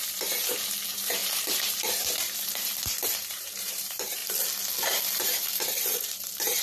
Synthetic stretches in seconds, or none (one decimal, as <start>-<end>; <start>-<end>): 0.0-4.2; 5.2-6.6